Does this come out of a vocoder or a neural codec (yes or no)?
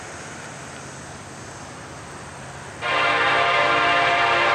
no